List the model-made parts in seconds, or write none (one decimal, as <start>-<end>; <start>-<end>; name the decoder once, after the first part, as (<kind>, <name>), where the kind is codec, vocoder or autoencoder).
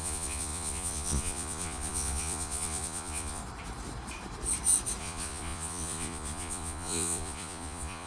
0.0-3.4 (vocoder, Vocos); 5.0-8.1